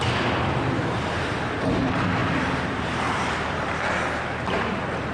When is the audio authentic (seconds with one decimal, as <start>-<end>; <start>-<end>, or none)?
0.0-2.2; 3.7-5.1